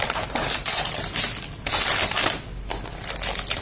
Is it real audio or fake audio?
real